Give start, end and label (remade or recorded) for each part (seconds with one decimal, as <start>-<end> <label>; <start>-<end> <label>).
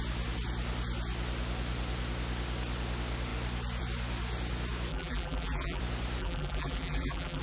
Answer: 0.0-4.9 recorded; 4.9-5.8 remade; 5.8-6.2 recorded; 6.2-7.4 remade